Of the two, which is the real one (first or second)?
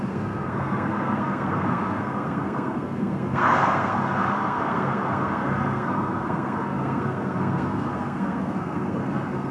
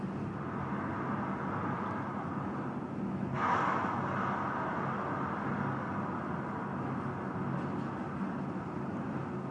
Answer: second